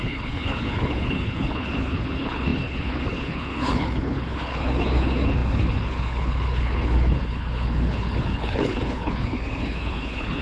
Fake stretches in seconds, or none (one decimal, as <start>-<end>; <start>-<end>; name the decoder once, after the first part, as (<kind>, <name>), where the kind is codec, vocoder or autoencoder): 0.0-10.4 (codec, HILCodec)